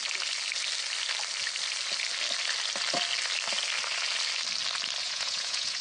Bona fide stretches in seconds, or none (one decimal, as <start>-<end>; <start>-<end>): 0.0-5.0